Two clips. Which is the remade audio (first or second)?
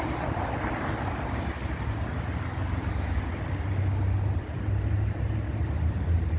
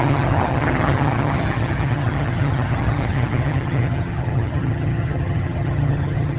second